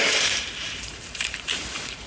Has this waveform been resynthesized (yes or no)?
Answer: yes